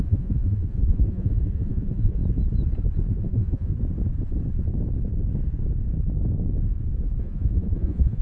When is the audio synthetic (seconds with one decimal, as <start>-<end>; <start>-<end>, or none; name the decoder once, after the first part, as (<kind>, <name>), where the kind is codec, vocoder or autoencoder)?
0.0-2.2 (vocoder, Vocos); 3.1-3.7; 7.2-8.2

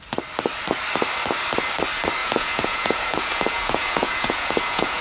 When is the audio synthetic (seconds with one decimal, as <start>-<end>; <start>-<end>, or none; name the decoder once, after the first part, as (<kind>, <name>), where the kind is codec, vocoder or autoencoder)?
2.2-5.0 (vocoder, Vocos)